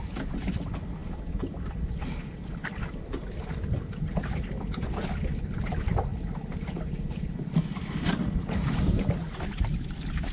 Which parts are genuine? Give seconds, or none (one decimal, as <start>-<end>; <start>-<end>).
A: 0.0-10.3